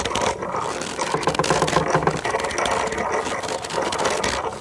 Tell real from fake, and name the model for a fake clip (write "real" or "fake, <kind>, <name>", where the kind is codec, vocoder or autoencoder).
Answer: real